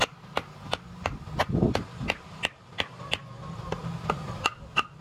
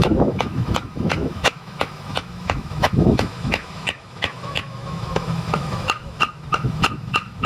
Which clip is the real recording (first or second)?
first